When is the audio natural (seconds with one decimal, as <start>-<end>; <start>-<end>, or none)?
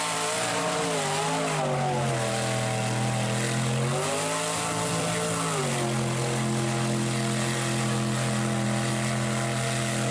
0.0-10.1